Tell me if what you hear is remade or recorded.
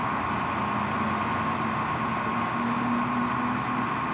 recorded